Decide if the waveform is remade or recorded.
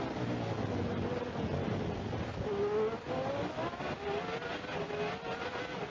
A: recorded